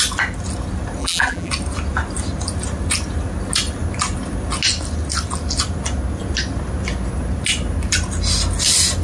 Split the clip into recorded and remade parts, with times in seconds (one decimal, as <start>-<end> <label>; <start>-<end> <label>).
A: 0.0-1.0 recorded; 1.0-1.5 remade; 1.5-9.0 recorded

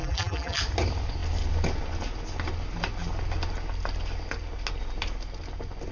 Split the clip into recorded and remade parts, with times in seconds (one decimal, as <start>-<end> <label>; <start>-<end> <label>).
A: 0.0-0.6 remade; 0.6-5.9 recorded

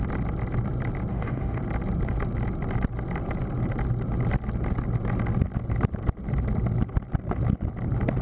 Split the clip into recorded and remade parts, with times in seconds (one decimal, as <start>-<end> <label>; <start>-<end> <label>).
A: 0.0-1.1 recorded; 1.1-1.6 remade; 1.6-8.2 recorded

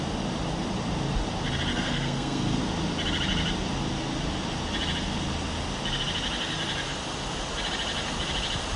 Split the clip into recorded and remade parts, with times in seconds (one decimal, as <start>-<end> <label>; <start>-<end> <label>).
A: 0.0-1.7 recorded; 1.7-2.6 remade; 2.6-8.8 recorded

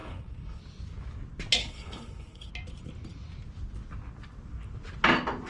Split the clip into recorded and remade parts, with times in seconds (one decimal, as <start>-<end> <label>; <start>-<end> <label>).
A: 0.0-0.6 remade; 0.6-1.6 recorded; 1.6-2.5 remade; 2.5-5.5 recorded

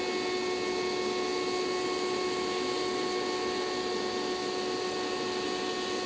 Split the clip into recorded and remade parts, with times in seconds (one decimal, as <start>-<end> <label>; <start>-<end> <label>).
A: 0.0-6.1 recorded